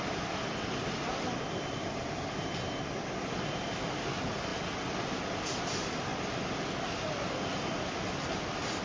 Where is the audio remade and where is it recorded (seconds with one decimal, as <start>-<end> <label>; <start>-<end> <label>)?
0.0-4.5 remade; 4.5-5.6 recorded; 5.6-6.1 remade; 6.1-7.7 recorded; 7.7-8.8 remade